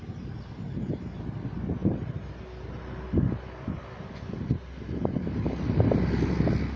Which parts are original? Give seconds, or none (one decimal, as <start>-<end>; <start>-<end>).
0.0-6.8

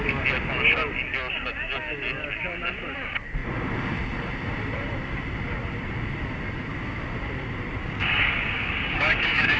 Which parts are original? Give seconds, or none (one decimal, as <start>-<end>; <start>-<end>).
0.0-7.8

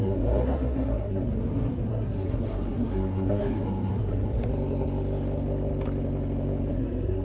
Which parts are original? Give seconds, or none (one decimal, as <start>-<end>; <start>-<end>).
4.5-6.7